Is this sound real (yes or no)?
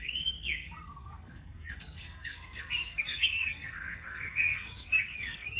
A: no